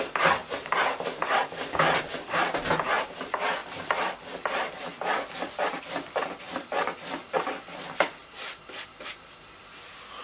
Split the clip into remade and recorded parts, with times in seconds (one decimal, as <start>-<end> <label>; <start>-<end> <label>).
0.0-10.2 recorded